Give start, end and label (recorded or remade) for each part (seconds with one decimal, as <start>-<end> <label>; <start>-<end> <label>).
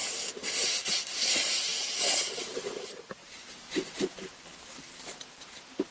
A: 0.0-0.8 remade; 0.8-1.7 recorded; 1.7-2.4 remade; 2.4-3.2 recorded; 3.2-5.4 remade; 5.4-5.9 recorded